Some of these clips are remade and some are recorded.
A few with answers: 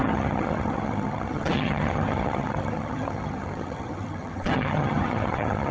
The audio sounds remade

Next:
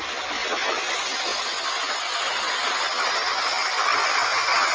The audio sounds recorded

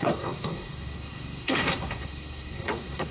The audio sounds remade